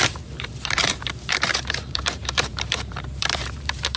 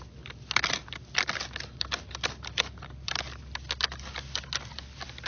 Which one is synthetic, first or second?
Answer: first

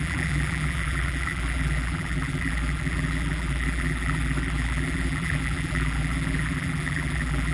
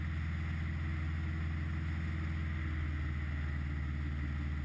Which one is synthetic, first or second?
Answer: first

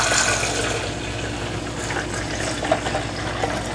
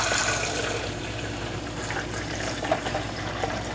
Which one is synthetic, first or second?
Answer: second